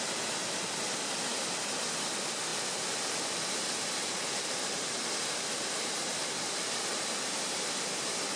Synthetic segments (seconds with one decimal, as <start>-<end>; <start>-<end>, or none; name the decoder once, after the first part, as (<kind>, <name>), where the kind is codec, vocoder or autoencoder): none